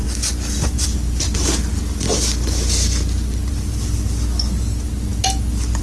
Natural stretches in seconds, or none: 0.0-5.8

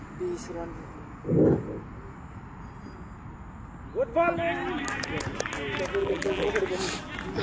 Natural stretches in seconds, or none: 0.0-6.0; 6.5-7.4

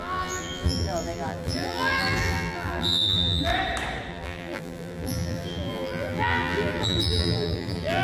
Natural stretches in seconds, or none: 3.5-4.1

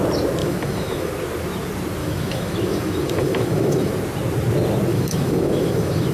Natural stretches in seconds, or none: 0.0-0.4; 1.1-2.0; 3.9-4.9

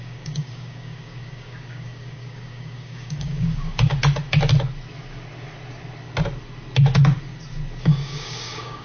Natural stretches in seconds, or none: 4.0-7.8